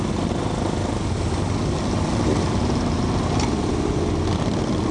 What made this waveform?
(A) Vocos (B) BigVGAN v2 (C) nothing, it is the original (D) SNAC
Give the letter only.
C